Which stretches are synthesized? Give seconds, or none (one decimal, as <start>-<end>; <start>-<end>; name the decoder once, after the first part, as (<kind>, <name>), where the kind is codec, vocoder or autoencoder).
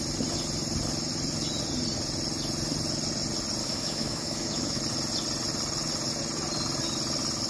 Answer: 3.6-4.8 (autoencoder, DAC-VAE)